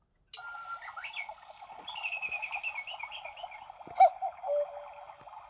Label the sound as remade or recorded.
recorded